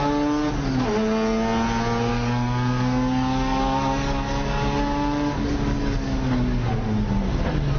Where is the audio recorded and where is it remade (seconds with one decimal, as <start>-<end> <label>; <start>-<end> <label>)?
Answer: 0.0-2.1 recorded; 2.1-6.8 remade; 6.8-7.8 recorded